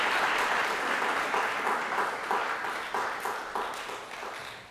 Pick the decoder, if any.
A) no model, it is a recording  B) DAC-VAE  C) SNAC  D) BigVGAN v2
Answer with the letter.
A